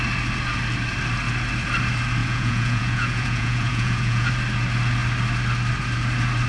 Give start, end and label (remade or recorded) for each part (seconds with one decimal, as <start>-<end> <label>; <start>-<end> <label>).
0.0-2.2 recorded; 2.2-4.3 remade; 4.3-6.5 recorded